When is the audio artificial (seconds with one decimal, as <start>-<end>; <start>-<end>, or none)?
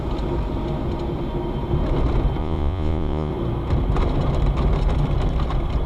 2.4-3.3